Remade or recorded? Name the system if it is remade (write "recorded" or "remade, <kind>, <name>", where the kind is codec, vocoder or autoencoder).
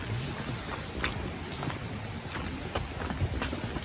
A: recorded